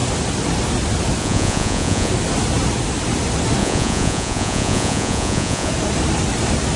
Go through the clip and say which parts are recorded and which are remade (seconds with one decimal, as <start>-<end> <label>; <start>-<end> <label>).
0.0-1.2 recorded; 1.2-2.1 remade; 2.1-3.6 recorded; 3.6-5.7 remade; 5.7-6.8 recorded